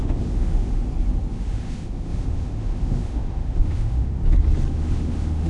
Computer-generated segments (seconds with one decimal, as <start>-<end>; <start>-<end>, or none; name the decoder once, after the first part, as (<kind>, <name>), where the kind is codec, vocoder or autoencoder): 0.0-0.8 (autoencoder, DAC-VAE); 1.3-4.2; 4.7-5.5